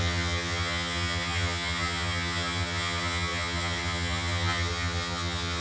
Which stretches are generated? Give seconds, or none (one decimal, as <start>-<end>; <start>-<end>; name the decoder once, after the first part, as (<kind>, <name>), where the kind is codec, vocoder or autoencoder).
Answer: 0.0-5.6 (vocoder, HiFi-GAN)